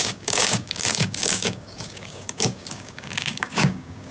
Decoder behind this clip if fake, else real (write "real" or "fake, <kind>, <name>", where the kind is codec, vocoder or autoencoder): fake, codec, DAC